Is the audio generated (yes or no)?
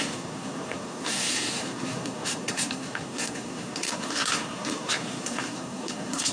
yes